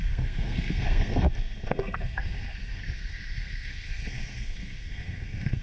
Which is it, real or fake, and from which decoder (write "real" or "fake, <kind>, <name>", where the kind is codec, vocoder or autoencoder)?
fake, codec, SNAC